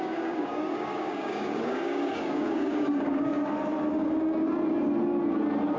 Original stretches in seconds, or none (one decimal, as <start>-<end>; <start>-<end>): 3.3-3.9; 4.4-5.8

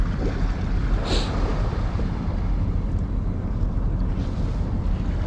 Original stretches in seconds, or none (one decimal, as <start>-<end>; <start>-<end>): 0.0-5.3

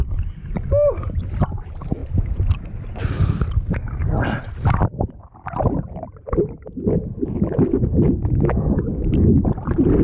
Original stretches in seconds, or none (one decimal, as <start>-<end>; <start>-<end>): 0.0-10.0

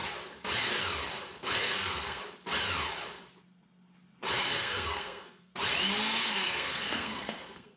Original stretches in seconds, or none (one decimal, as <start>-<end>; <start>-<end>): 0.0-1.6; 2.2-4.4; 5.5-6.2

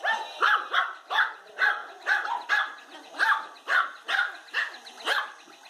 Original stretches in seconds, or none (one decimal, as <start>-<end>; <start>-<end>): 0.0-5.7

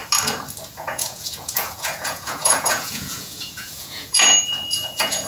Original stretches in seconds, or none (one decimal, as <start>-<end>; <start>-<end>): 0.0-0.7

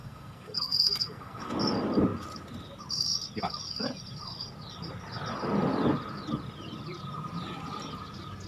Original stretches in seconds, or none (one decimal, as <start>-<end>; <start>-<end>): 1.5-8.5

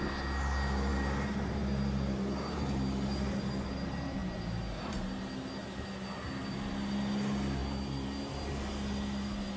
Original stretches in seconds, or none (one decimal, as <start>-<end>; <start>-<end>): 0.0-9.6